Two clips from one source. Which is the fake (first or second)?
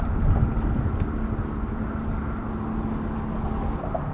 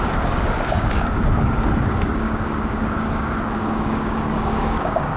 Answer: second